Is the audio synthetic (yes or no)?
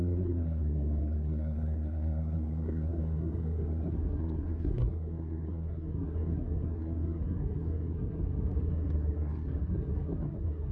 yes